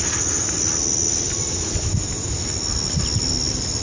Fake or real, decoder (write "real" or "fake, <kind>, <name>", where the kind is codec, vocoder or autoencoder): real